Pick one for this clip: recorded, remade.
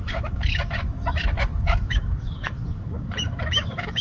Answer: remade